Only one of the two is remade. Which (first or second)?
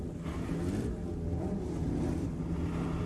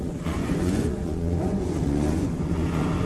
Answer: second